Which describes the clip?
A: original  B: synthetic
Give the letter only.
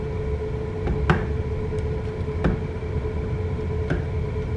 A